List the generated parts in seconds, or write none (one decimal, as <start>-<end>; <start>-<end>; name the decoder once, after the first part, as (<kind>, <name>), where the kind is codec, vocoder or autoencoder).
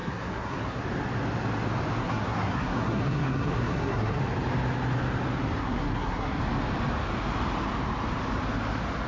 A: 0.0-0.8 (codec, SNAC); 2.0-4.2; 5.6-6.4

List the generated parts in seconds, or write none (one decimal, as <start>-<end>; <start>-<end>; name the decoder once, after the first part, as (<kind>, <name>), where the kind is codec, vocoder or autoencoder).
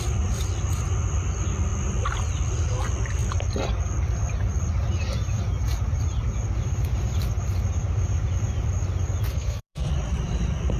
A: 9.3-9.9 (codec, SNAC)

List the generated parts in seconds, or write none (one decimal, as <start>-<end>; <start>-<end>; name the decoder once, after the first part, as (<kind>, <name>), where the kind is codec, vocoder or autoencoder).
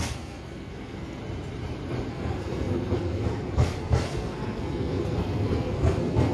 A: 0.0-1.2 (codec, SNAC); 2.1-6.3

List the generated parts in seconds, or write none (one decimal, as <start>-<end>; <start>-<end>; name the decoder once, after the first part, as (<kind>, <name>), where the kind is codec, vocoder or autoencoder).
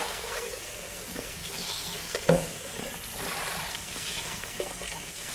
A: 0.0-2.8 (codec, SNAC); 3.7-5.3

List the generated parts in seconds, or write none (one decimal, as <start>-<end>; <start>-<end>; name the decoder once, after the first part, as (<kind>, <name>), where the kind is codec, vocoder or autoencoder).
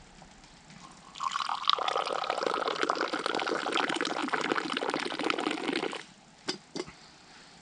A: none